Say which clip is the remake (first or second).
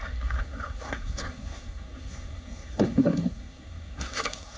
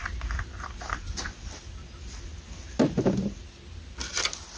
first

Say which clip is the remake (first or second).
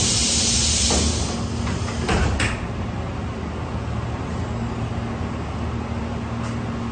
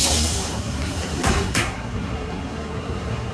second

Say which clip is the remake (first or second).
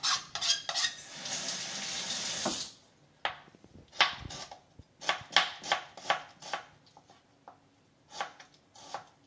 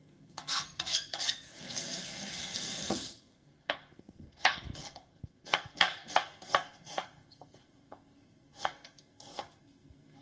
second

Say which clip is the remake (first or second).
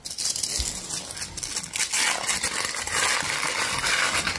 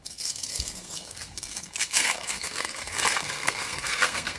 second